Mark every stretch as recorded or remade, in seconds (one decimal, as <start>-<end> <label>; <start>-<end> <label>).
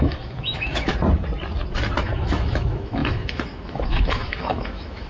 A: 0.0-0.9 remade; 0.9-2.0 recorded; 2.0-5.1 remade